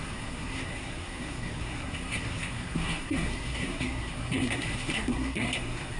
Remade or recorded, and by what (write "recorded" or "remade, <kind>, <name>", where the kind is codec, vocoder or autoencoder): remade, codec, SNAC